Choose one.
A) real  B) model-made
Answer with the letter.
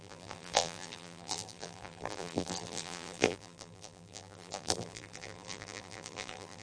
B